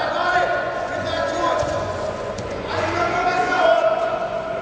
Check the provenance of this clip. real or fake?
fake